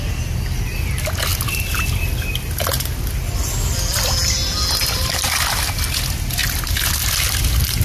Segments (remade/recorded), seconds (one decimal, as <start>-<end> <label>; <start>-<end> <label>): 0.0-7.8 recorded

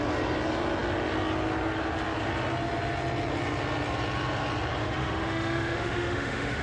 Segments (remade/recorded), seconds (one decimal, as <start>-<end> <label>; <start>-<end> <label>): 0.0-4.8 recorded; 4.8-6.6 remade

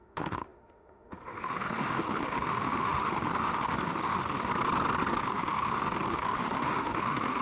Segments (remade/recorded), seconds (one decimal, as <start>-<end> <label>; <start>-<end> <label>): 0.0-4.5 remade; 4.5-5.2 recorded; 5.2-7.4 remade

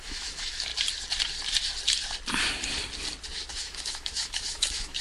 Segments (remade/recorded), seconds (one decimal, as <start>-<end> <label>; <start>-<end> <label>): 0.0-0.7 remade; 0.7-3.5 recorded; 3.5-5.0 remade

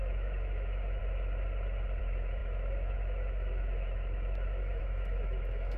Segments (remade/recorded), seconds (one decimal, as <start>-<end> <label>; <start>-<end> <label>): 0.0-1.0 remade; 1.0-2.0 recorded; 2.0-5.8 remade

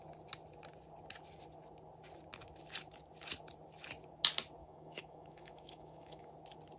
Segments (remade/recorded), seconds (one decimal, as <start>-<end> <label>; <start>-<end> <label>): 0.0-4.6 recorded; 4.6-6.3 remade; 6.3-6.8 recorded